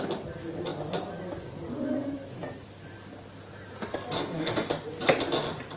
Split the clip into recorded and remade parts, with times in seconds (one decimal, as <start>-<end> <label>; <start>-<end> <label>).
0.0-4.2 recorded; 4.2-4.7 remade; 4.7-5.8 recorded